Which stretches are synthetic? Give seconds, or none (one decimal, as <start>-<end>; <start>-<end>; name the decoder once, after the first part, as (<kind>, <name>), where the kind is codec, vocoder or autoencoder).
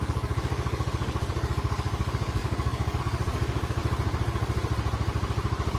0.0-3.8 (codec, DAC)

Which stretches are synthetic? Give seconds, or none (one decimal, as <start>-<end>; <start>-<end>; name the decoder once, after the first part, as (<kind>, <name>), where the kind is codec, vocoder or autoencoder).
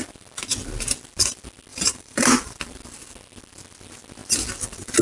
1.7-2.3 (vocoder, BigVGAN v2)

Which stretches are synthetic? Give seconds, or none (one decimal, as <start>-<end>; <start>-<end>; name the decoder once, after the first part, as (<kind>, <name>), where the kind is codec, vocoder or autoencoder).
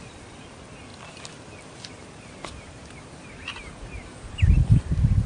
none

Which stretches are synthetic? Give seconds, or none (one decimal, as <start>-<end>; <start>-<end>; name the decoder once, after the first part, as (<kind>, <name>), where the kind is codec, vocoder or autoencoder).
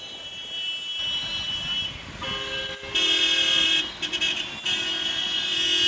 none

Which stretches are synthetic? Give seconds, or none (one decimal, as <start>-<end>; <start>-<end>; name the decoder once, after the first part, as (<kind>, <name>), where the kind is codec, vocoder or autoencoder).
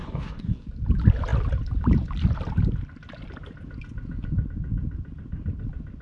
0.0-0.7 (codec, DAC)